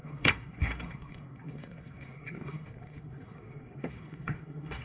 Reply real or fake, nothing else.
fake